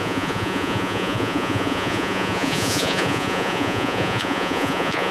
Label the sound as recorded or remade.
remade